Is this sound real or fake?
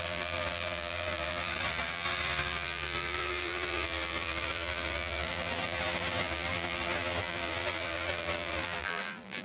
fake